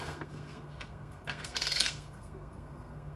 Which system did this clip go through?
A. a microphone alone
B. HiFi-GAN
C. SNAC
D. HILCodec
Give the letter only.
C